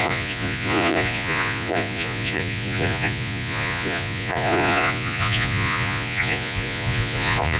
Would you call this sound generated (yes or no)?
yes